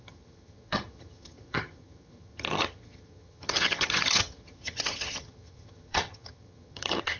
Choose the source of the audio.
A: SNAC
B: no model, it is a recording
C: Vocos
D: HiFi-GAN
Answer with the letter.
D